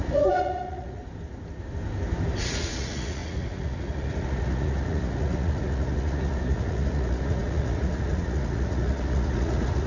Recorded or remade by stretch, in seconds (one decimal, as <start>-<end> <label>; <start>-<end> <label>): 0.0-1.0 remade; 1.0-2.4 recorded; 2.4-9.9 remade